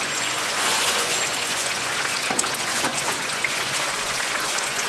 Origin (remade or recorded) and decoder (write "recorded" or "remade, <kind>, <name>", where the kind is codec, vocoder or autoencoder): remade, vocoder, Vocos